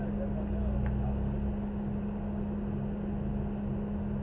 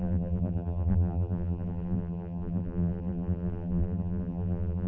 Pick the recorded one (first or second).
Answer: first